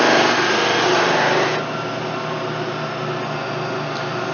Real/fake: real